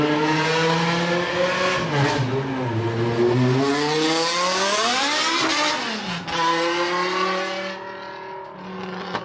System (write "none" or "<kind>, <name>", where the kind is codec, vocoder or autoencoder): none